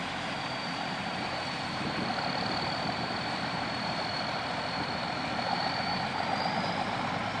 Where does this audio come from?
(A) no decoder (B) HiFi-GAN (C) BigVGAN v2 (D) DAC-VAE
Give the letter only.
C